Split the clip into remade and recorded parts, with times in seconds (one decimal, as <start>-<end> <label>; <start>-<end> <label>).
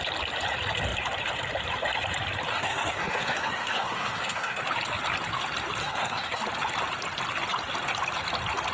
0.0-2.5 recorded; 2.5-4.6 remade; 4.6-5.8 recorded; 5.8-6.4 remade; 6.4-8.7 recorded